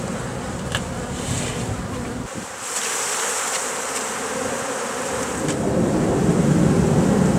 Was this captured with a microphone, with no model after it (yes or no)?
yes